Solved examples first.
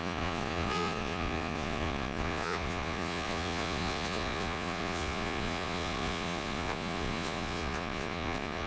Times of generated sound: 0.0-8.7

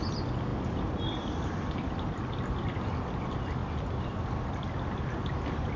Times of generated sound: none